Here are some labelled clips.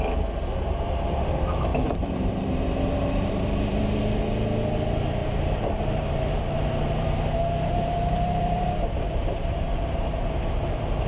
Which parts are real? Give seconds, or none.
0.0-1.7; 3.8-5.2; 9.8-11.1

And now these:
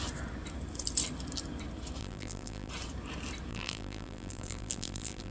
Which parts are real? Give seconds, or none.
0.0-2.0; 2.7-3.5

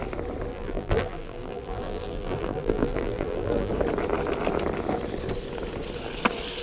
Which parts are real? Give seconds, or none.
0.0-0.5; 3.7-6.6

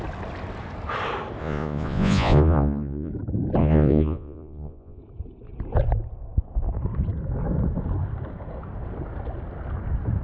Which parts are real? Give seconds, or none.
0.0-1.4; 3.1-3.6; 5.0-10.2